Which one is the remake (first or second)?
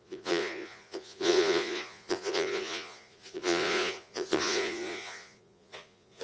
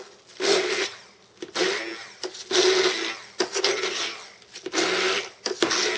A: first